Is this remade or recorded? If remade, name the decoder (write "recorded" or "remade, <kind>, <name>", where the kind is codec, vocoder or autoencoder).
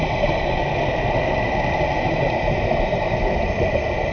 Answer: recorded